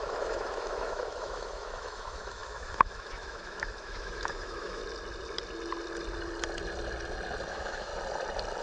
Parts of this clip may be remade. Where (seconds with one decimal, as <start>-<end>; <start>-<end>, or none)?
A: 0.0-4.8; 7.5-7.9